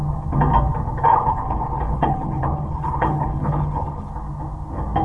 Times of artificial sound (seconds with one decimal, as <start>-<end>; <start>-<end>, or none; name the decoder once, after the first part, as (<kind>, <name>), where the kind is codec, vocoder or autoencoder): 1.1-4.1 (codec, HILCodec)